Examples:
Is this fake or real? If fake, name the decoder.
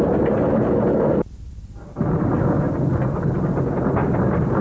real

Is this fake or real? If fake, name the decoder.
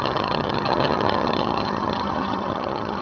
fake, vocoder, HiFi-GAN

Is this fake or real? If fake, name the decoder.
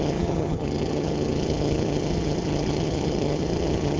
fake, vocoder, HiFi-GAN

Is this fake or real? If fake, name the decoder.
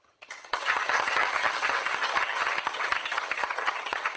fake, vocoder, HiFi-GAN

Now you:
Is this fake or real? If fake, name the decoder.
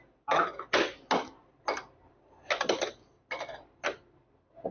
real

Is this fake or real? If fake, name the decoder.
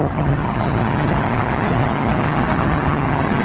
fake, vocoder, HiFi-GAN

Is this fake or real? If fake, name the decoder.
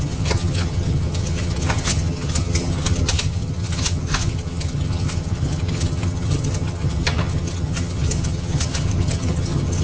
fake, vocoder, HiFi-GAN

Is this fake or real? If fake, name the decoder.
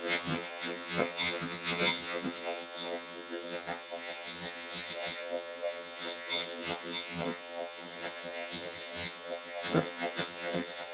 fake, vocoder, HiFi-GAN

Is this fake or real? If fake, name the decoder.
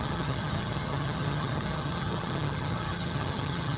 fake, vocoder, HiFi-GAN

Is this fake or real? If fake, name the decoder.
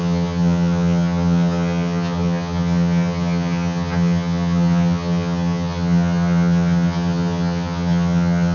fake, vocoder, HiFi-GAN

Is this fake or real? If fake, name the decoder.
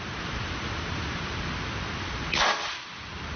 real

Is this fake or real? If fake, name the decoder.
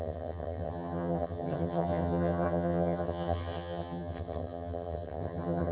fake, vocoder, HiFi-GAN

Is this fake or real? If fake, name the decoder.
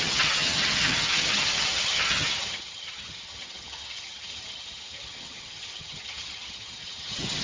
fake, vocoder, HiFi-GAN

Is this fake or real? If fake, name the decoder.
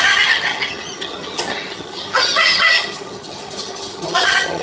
fake, vocoder, HiFi-GAN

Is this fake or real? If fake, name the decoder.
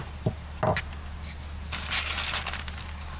real